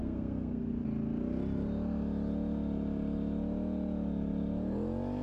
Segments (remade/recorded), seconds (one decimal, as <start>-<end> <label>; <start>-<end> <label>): 0.0-0.7 remade; 0.7-5.2 recorded